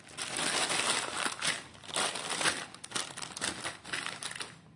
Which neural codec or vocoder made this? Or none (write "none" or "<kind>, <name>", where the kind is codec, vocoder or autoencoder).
none